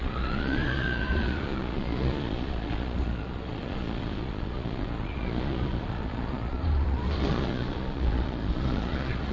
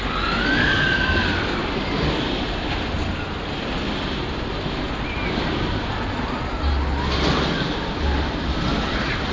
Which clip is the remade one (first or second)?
first